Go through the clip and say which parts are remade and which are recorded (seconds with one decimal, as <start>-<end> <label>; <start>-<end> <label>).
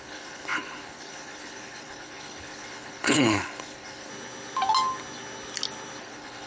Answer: 0.0-4.1 remade; 4.1-6.0 recorded; 6.0-6.5 remade